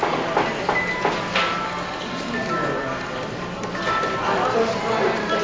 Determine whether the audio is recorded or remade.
recorded